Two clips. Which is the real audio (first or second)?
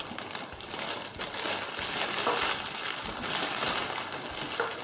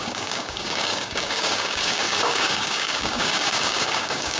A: first